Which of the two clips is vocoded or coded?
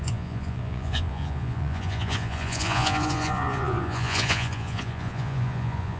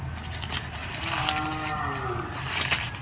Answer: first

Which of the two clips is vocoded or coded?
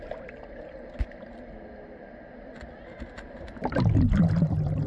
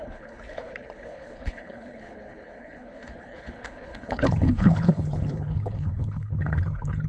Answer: second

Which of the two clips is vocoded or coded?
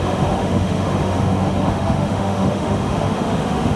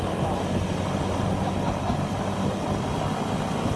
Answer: first